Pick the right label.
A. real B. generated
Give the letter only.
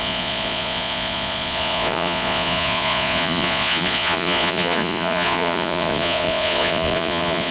B